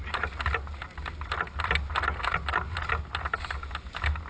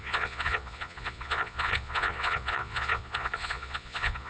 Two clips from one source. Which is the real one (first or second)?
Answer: first